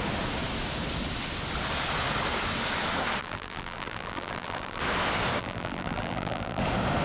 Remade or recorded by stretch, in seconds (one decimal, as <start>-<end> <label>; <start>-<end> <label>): 0.0-3.2 recorded; 3.2-4.8 remade; 4.8-5.4 recorded; 5.4-6.6 remade; 6.6-7.0 recorded